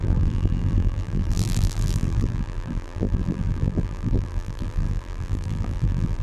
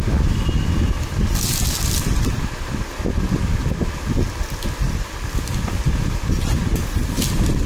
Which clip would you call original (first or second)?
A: second